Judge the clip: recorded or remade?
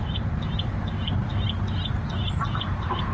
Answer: recorded